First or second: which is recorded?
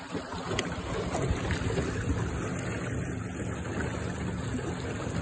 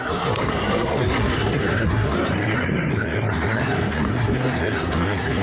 first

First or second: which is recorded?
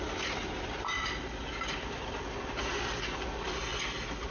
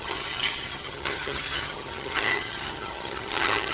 first